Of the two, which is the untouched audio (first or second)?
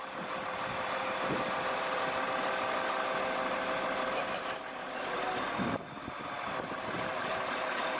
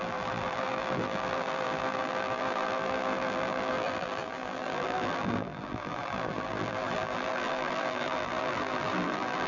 first